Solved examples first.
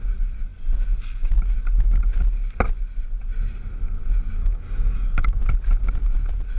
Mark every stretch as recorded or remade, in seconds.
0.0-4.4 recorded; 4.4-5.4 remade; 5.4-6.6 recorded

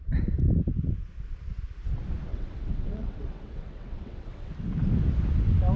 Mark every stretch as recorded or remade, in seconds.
0.0-2.3 recorded; 2.3-4.5 remade; 4.5-5.8 recorded

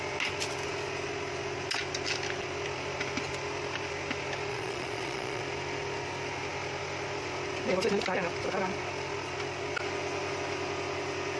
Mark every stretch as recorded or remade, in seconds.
0.0-4.5 recorded; 4.5-5.4 remade; 5.4-11.4 recorded

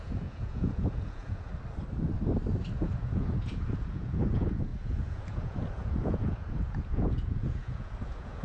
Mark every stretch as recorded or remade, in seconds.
0.0-1.5 remade; 1.5-2.6 recorded; 2.6-8.4 remade

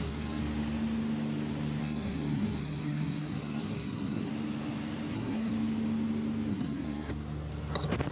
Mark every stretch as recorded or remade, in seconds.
0.0-0.4 remade; 0.4-1.8 recorded; 1.8-4.3 remade; 4.3-5.1 recorded; 5.1-5.5 remade; 5.5-6.5 recorded; 6.5-7.1 remade; 7.1-8.1 recorded

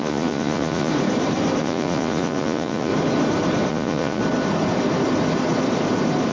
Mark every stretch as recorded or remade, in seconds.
0.0-0.9 remade; 0.9-1.6 recorded; 1.6-2.9 remade; 2.9-3.7 recorded; 3.7-4.2 remade; 4.2-6.3 recorded

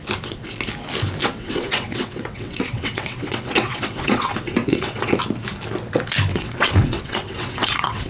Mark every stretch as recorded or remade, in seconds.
0.0-1.2 recorded; 1.2-5.2 remade; 5.2-6.3 recorded; 6.3-8.1 remade